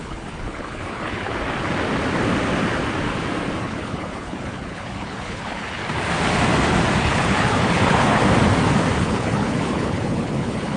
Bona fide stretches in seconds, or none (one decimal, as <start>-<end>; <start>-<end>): 1.3-3.6; 5.8-7.0; 8.2-9.0